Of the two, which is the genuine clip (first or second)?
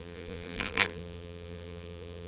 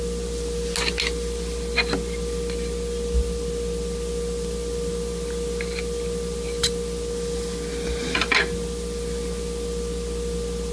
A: second